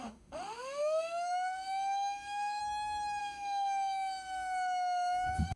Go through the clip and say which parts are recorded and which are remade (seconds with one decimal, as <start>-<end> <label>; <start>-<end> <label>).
0.0-2.6 remade; 2.6-3.2 recorded; 3.2-5.6 remade